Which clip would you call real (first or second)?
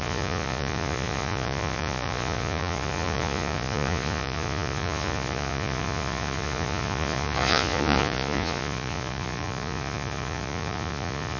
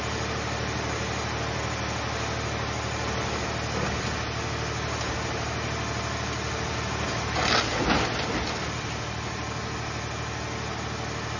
second